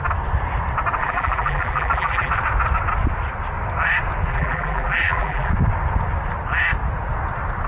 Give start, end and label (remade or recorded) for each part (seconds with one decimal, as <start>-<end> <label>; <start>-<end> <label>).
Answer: 0.0-1.0 recorded; 1.0-2.3 remade; 2.3-4.3 recorded; 4.3-5.5 remade; 5.5-7.7 recorded